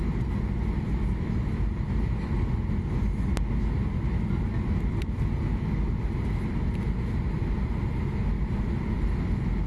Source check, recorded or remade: recorded